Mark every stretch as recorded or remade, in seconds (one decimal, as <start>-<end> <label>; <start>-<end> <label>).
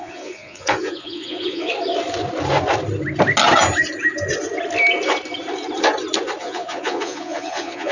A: 0.0-1.7 remade; 1.7-6.4 recorded; 6.4-7.9 remade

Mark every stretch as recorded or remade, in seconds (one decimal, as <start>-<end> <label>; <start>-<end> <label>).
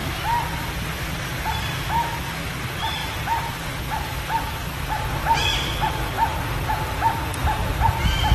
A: 0.0-8.3 recorded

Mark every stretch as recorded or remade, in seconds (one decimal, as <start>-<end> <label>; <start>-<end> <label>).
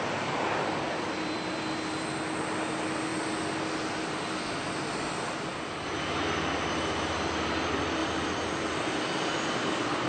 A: 0.0-10.1 recorded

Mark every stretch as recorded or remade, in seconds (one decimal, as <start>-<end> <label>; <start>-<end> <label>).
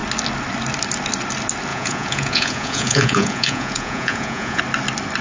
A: 0.0-1.7 recorded; 1.7-4.6 remade; 4.6-5.2 recorded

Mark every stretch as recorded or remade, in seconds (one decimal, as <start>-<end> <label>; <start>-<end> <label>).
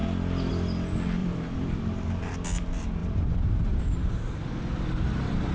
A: 0.0-1.2 recorded; 1.2-2.3 remade; 2.3-3.0 recorded; 3.0-4.5 remade; 4.5-5.5 recorded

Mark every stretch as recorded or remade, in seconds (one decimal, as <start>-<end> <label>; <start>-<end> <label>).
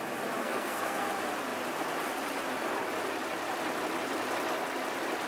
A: 0.0-0.4 recorded; 0.4-1.1 remade; 1.1-5.3 recorded